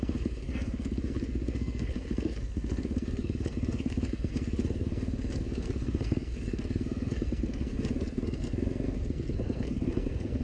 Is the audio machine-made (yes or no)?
yes